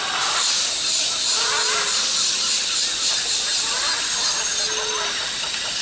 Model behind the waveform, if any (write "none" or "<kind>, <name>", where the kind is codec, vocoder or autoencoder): none